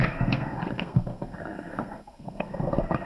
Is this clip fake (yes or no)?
yes